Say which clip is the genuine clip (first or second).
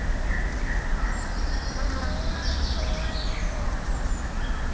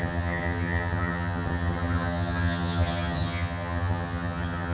first